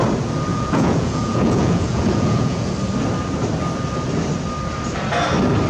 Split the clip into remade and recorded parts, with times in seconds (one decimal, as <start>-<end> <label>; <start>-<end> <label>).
0.0-0.5 recorded; 0.5-2.7 remade; 2.7-5.7 recorded